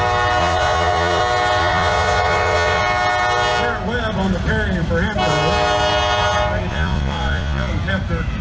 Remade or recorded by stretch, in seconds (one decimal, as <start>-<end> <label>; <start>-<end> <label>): 0.0-0.4 recorded; 0.4-1.2 remade; 1.2-1.6 recorded; 1.6-2.8 remade; 2.8-6.7 recorded; 6.7-7.7 remade; 7.7-8.4 recorded